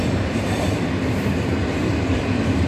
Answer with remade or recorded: remade